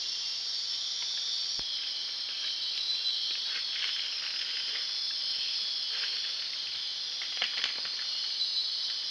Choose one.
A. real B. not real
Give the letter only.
A